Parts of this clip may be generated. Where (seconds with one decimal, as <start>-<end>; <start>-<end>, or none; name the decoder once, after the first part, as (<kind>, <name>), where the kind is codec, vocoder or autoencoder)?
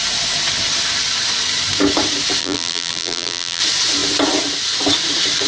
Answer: 2.4-3.6 (vocoder, BigVGAN v2)